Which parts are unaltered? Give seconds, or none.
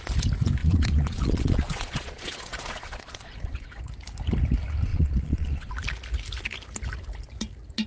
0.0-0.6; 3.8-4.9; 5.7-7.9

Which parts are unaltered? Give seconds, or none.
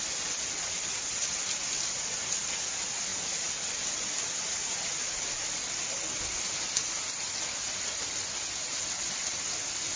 0.0-10.0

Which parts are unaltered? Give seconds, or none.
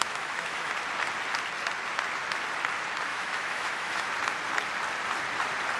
0.7-3.1; 4.1-5.8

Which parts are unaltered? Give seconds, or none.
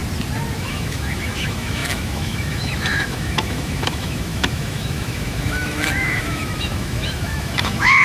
0.0-0.6